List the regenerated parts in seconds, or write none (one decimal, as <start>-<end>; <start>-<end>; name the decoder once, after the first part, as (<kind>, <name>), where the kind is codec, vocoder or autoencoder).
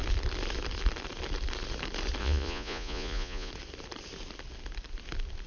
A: 2.2-3.5 (vocoder, Vocos)